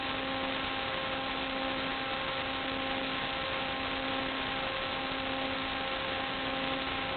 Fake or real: real